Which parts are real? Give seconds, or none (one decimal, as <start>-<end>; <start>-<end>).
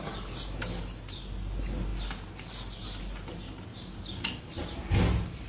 0.0-1.9; 3.0-3.7; 4.5-5.5